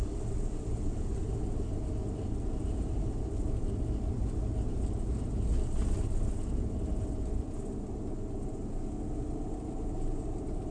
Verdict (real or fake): real